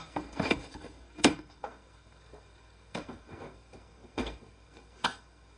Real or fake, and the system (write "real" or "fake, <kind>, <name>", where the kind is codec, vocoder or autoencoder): fake, codec, SNAC